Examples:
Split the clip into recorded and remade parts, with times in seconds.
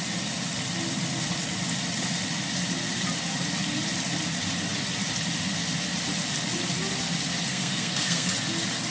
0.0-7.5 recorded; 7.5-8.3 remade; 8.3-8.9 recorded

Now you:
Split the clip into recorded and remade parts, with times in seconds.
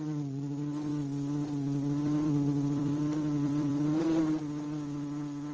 0.0-0.9 recorded; 0.9-4.2 remade; 4.2-5.5 recorded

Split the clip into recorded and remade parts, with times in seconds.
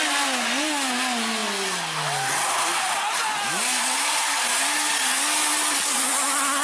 0.0-6.6 recorded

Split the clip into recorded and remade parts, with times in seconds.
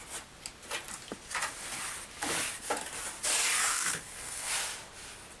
0.0-3.7 recorded; 3.7-4.5 remade; 4.5-5.4 recorded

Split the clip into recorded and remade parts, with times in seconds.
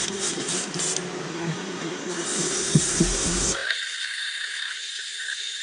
0.0-0.7 remade; 0.7-1.3 recorded; 1.3-5.6 remade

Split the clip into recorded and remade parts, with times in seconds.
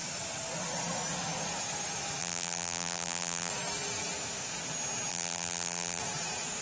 0.0-2.2 recorded; 2.2-3.5 remade; 3.5-5.1 recorded; 5.1-6.0 remade; 6.0-6.6 recorded